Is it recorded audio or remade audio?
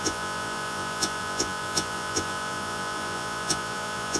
remade